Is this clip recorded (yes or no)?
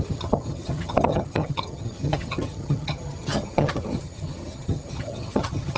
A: no